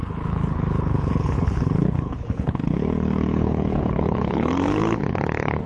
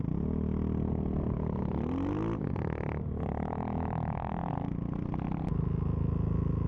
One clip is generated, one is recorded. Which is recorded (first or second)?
second